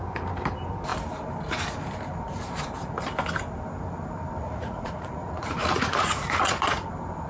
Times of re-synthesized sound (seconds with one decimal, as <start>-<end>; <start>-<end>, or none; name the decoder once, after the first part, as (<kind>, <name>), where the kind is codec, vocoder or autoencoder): 4.4-6.8 (vocoder, Vocos)